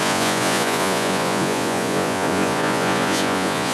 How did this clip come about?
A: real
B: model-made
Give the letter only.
B